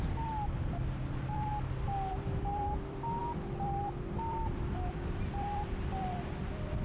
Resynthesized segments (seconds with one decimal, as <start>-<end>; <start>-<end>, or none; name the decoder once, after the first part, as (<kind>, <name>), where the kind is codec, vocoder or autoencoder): 0.0-1.5 (vocoder, BigVGAN v2); 2.1-6.8